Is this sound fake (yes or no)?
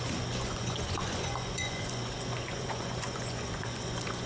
yes